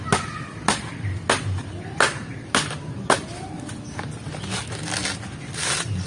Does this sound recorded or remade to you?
recorded